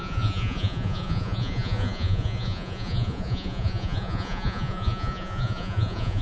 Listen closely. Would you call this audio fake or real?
fake